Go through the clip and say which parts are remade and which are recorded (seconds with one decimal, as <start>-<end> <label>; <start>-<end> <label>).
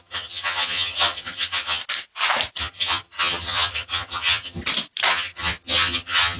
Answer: 0.0-1.8 remade; 1.8-2.6 recorded; 2.6-4.6 remade; 4.6-5.1 recorded; 5.1-6.4 remade